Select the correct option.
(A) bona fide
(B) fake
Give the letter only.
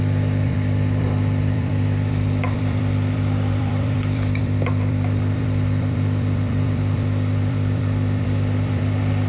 B